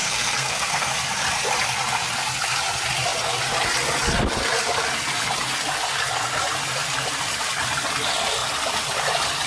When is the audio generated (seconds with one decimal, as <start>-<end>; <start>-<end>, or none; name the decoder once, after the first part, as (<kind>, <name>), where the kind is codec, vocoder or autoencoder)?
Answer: 0.0-0.9 (codec, SNAC)